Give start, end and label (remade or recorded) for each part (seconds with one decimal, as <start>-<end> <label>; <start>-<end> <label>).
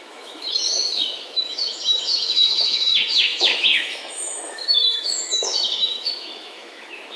0.0-7.2 remade